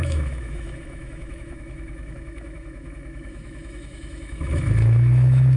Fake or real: fake